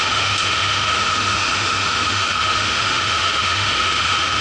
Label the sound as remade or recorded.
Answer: remade